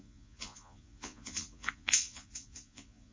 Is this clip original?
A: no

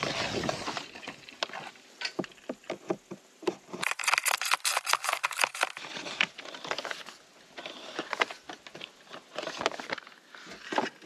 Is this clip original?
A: yes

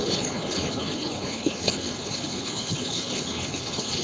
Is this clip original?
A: no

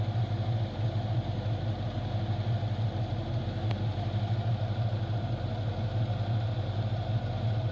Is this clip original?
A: yes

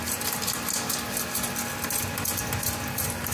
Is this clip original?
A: yes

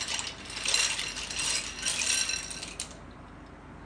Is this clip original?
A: yes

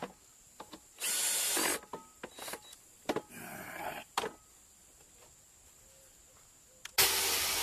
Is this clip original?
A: yes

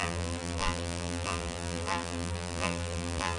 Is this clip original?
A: no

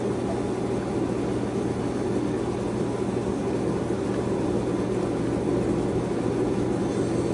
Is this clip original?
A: yes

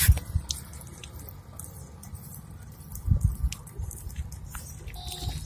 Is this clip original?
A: yes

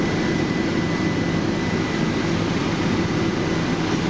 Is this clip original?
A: yes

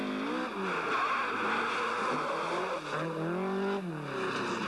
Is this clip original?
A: yes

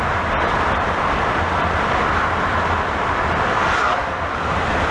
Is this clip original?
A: yes